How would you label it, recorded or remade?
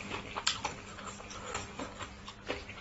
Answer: recorded